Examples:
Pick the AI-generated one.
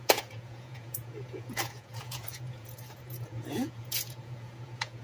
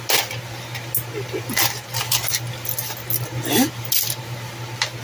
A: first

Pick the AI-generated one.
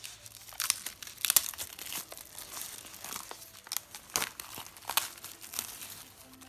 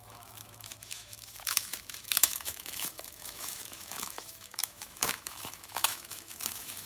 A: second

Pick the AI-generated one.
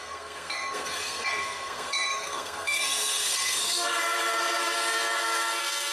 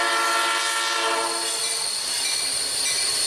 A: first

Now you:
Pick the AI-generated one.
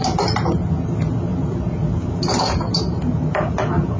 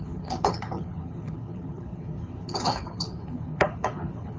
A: second